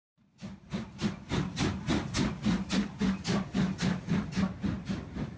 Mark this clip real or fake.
real